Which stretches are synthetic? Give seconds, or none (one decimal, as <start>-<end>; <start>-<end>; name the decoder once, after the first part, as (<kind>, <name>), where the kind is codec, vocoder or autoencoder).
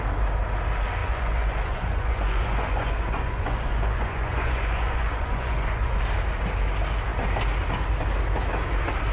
1.0-6.0 (vocoder, Vocos)